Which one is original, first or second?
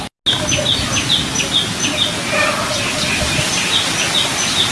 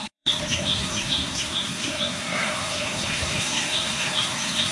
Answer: first